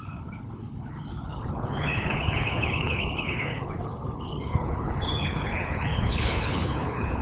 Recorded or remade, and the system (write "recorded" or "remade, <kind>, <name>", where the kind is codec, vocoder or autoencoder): remade, codec, HILCodec